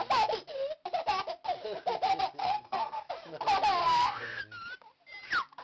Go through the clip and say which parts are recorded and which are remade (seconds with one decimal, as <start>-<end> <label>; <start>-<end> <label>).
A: 0.0-2.4 recorded; 2.4-3.1 remade; 3.1-3.8 recorded; 3.8-4.4 remade; 4.4-5.6 recorded